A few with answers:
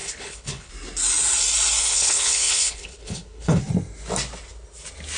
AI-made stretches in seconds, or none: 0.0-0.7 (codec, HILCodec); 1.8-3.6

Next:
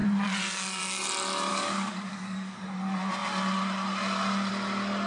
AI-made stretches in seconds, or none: 1.5-2.6 (codec, DAC)

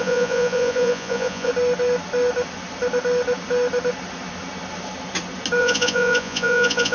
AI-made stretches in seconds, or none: 0.0-1.5 (vocoder, Vocos); 5.6-6.9

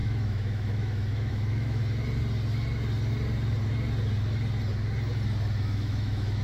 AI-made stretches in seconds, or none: 0.0-1.8 (autoencoder, DAC-VAE); 5.6-6.4

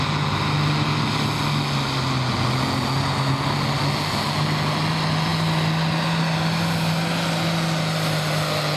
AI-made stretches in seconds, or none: none

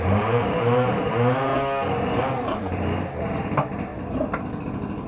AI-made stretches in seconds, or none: 0.0-1.5 (vocoder, BigVGAN v2); 2.2-3.9

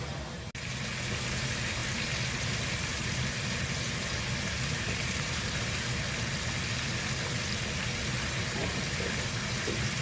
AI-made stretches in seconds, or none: 2.9-3.4 (vocoder, BigVGAN v2); 4.7-6.0

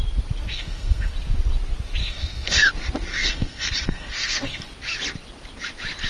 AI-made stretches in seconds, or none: 0.5-1.1 (codec, SNAC); 2.0-2.7; 3.1-4.6